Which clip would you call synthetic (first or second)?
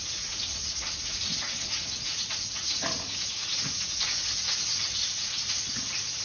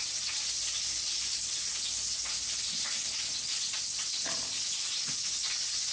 first